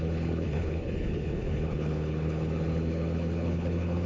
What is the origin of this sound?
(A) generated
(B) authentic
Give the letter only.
A